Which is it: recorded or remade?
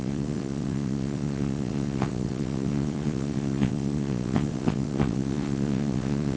remade